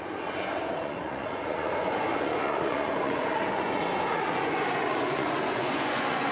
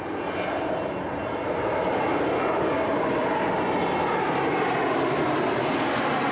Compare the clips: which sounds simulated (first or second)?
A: first